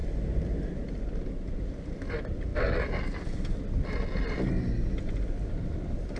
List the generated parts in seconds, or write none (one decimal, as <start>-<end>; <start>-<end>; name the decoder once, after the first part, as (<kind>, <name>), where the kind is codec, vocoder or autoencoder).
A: none